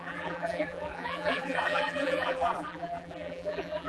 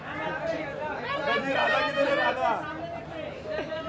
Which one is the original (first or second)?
second